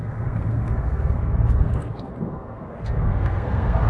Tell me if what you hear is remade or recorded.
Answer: remade